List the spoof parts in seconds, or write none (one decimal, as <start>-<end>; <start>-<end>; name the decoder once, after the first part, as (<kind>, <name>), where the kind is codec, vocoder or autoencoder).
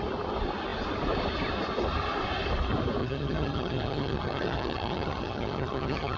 3.0-6.2 (vocoder, HiFi-GAN)